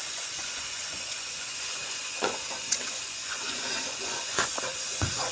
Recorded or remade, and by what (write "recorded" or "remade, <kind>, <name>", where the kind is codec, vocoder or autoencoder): remade, vocoder, Vocos